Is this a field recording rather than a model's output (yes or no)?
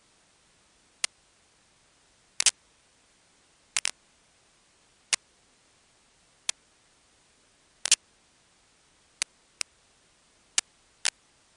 yes